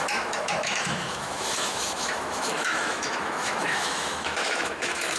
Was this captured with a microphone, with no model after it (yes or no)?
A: no